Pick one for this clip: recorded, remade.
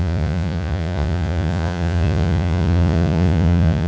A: remade